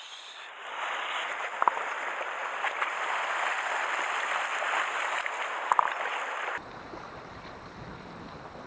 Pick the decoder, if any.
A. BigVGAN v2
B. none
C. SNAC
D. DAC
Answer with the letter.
B